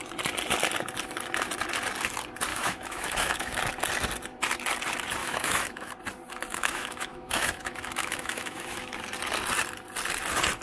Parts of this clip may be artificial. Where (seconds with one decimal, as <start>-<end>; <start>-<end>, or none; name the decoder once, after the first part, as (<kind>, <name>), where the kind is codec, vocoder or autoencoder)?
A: 2.5-3.6 (autoencoder, DAC-VAE); 5.2-5.9; 6.5-8.9